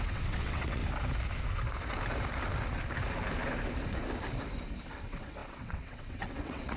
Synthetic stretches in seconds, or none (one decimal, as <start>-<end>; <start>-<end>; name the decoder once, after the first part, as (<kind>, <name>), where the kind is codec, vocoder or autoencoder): 0.0-0.8 (vocoder, WaveNeXt); 4.9-6.8